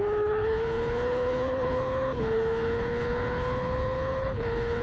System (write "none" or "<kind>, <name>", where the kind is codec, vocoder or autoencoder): codec, HILCodec